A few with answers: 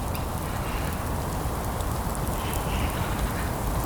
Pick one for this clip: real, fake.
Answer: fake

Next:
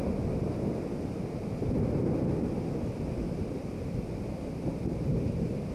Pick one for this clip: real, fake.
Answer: real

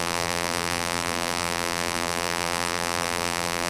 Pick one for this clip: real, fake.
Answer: fake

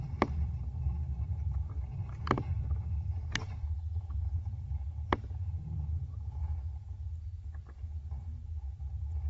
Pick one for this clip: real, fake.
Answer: real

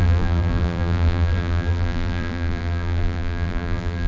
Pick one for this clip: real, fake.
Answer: fake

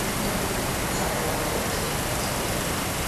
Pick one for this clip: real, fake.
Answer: real